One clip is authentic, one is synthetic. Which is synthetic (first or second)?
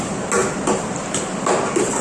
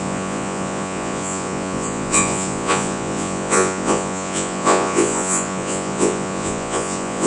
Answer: second